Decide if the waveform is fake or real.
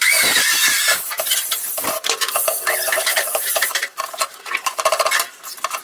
fake